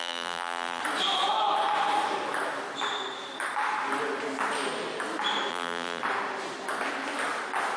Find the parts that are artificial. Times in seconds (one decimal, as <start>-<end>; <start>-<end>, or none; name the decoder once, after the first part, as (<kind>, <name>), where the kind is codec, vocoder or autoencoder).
0.0-0.8 (vocoder, BigVGAN v2); 5.5-6.0